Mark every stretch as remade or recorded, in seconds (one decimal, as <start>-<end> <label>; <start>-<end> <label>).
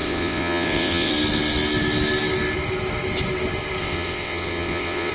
0.0-1.1 remade; 1.1-3.8 recorded; 3.8-5.1 remade